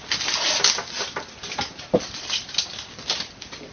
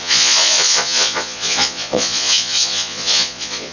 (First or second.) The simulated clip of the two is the second